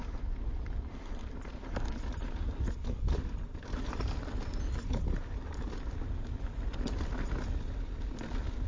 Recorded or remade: recorded